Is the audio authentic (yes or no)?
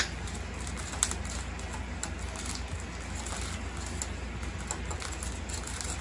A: yes